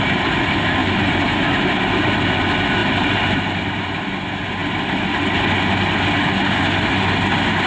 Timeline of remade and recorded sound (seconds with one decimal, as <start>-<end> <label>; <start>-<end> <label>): 0.0-0.8 recorded; 0.8-2.2 remade; 2.2-2.8 recorded; 2.8-3.8 remade; 3.8-7.7 recorded